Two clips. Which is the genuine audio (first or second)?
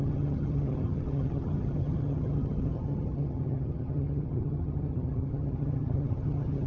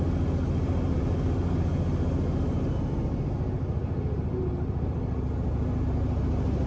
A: second